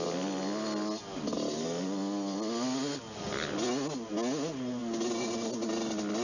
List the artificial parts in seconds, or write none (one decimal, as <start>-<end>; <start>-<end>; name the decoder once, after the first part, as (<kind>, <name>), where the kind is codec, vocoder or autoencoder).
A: none